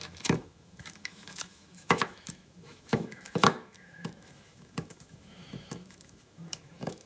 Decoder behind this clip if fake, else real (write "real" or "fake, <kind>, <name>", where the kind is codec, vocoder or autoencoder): fake, autoencoder, DAC-VAE